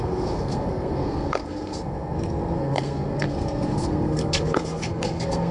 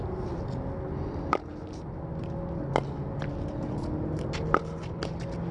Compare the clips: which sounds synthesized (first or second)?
first